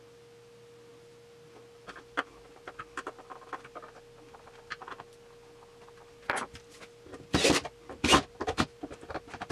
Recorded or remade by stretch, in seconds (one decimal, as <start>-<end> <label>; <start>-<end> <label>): 0.0-9.5 recorded